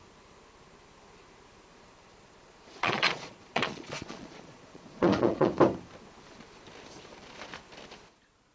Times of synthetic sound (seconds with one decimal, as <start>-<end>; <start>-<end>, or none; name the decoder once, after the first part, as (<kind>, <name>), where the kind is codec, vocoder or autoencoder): 1.7-5.5 (vocoder, Vocos)